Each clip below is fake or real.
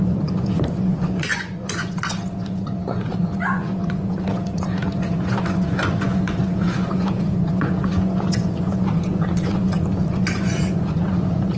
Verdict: fake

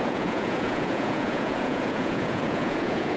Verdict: fake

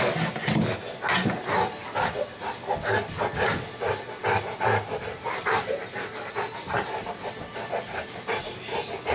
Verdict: real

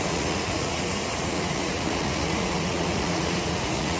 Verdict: fake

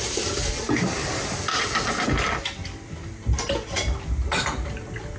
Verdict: real